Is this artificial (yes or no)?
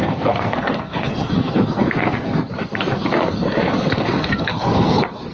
yes